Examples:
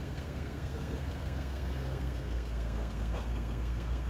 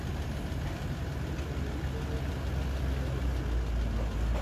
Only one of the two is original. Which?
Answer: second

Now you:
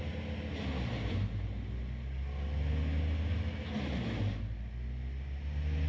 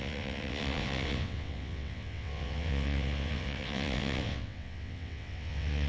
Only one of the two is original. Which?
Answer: first